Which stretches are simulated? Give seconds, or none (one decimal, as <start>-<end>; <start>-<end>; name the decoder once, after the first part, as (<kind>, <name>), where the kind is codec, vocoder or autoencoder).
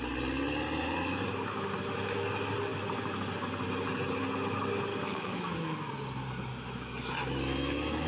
4.9-5.9 (autoencoder, DAC-VAE); 6.5-8.1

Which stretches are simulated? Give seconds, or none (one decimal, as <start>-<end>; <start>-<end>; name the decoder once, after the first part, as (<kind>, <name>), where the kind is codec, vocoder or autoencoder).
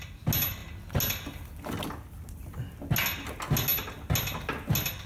none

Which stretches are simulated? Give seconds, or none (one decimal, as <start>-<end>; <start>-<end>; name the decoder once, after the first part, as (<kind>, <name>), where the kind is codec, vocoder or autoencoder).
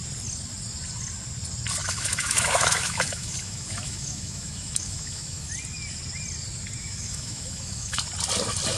1.8-5.5 (autoencoder, DAC-VAE); 6.8-8.0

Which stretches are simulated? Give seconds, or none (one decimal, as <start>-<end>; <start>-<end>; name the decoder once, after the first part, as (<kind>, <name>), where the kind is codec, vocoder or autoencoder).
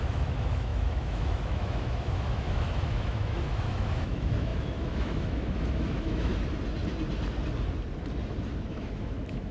0.0-6.3 (autoencoder, DAC-VAE); 8.7-9.5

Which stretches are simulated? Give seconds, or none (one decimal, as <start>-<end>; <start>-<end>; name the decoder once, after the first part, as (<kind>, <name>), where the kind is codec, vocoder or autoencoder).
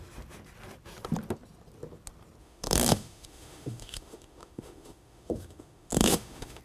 2.4-6.6 (autoencoder, DAC-VAE)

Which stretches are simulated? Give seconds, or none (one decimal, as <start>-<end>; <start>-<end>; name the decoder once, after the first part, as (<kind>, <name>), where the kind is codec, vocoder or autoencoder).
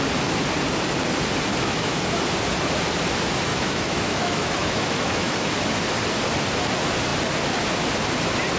1.5-2.0 (autoencoder, DAC-VAE); 3.5-5.3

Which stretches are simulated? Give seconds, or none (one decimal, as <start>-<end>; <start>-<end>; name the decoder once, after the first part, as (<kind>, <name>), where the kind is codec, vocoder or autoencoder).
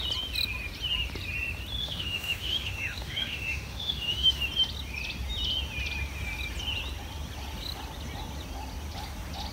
1.8-4.4 (autoencoder, DAC-VAE)